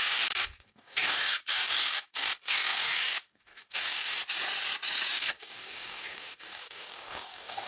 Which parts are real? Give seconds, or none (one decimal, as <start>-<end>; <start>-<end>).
4.2-5.1